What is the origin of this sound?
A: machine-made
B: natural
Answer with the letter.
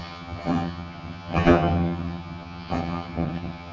A